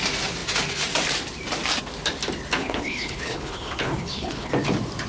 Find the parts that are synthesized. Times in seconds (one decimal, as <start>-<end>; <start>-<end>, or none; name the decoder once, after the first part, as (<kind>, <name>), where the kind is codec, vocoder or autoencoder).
2.6-4.5 (codec, HILCodec)